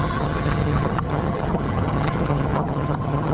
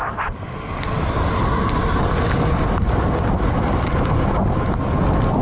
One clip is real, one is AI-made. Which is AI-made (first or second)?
first